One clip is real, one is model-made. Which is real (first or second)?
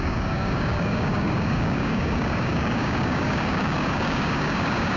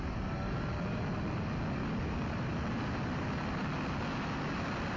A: second